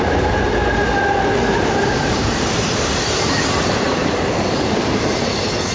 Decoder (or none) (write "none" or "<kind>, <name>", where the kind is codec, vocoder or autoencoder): vocoder, BigVGAN v2